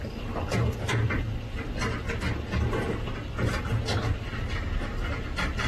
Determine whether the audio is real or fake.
real